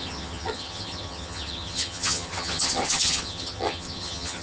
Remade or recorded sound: remade